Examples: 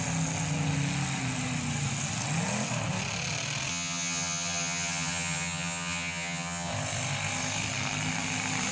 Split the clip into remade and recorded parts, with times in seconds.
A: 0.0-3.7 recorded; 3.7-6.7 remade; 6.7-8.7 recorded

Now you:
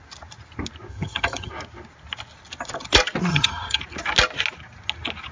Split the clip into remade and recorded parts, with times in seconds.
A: 0.0-0.9 recorded; 0.9-1.5 remade; 1.5-3.3 recorded; 3.3-3.8 remade; 3.8-5.3 recorded

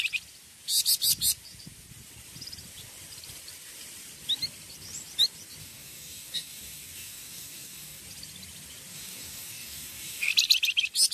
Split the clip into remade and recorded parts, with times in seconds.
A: 0.0-5.6 recorded; 5.6-8.0 remade; 8.0-8.9 recorded; 8.9-10.3 remade; 10.3-11.1 recorded

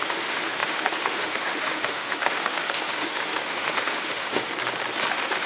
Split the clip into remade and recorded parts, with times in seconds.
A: 0.0-4.5 remade; 4.5-5.1 recorded; 5.1-5.5 remade

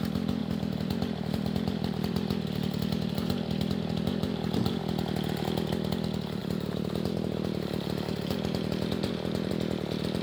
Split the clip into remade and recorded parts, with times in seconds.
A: 0.0-0.4 recorded; 0.4-4.8 remade; 4.8-6.4 recorded; 6.4-9.5 remade; 9.5-10.2 recorded

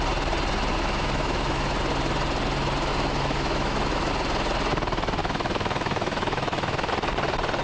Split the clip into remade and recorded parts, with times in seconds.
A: 0.0-0.7 recorded; 0.7-1.8 remade; 1.8-2.9 recorded; 2.9-4.1 remade; 4.1-5.2 recorded; 5.2-6.9 remade; 6.9-7.6 recorded